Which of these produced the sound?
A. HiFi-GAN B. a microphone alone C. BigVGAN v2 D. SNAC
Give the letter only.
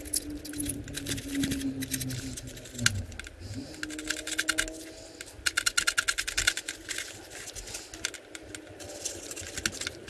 B